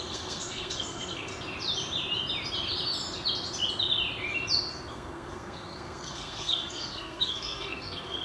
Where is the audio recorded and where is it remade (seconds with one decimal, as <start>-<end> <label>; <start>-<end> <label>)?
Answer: 0.0-1.3 remade; 1.3-4.9 recorded; 4.9-8.2 remade